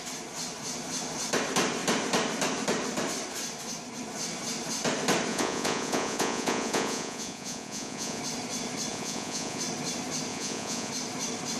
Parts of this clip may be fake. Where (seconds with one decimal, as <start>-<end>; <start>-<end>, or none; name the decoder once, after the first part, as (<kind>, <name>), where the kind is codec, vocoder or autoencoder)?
5.3-8.2 (vocoder, Vocos); 8.9-9.6; 10.3-10.9